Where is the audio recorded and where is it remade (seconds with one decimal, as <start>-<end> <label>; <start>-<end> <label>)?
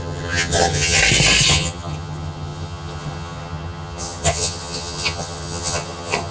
0.0-1.0 remade; 1.0-1.5 recorded; 1.5-6.3 remade